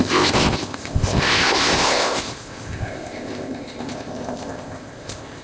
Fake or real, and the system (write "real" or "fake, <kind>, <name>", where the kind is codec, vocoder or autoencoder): fake, codec, ZipCodec